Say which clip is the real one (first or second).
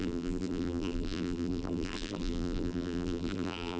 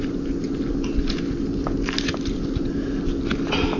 second